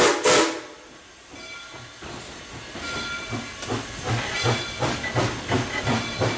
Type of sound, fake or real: real